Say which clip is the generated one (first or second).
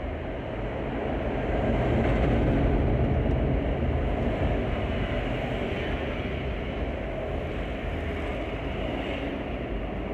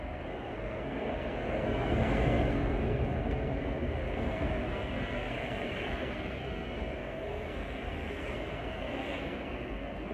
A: second